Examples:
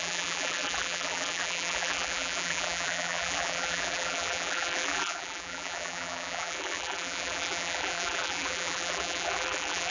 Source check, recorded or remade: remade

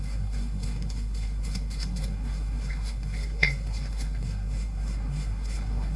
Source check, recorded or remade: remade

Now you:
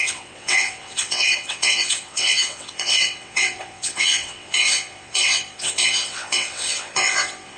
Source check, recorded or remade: remade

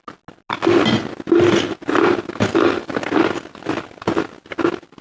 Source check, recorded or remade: recorded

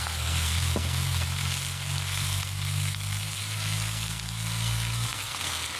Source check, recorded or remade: remade